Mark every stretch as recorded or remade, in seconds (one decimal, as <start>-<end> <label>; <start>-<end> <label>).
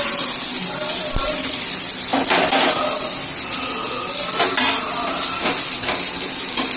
0.0-6.8 recorded